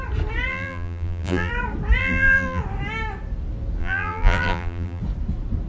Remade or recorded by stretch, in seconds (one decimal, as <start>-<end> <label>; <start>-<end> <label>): 0.0-0.5 recorded; 0.5-1.5 remade; 1.5-2.0 recorded; 2.0-2.6 remade; 2.6-3.8 recorded; 3.8-5.0 remade; 5.0-5.7 recorded